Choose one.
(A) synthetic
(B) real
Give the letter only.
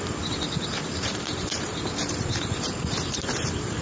A